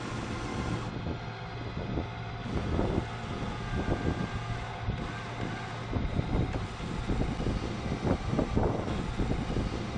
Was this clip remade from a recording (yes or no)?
no